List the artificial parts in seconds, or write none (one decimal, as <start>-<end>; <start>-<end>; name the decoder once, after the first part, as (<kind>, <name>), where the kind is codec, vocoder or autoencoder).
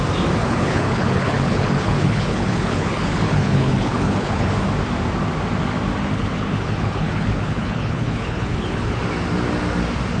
0.4-4.5 (codec, HILCodec); 6.0-9.0